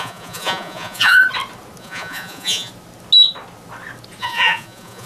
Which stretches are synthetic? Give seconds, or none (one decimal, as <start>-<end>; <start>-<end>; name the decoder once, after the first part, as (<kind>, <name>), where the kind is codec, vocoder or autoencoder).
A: 0.0-1.2 (vocoder, Vocos); 1.8-2.7; 4.2-5.1